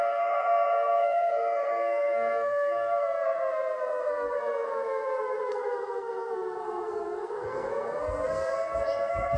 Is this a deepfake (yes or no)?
yes